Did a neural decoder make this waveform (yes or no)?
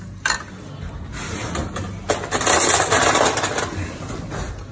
no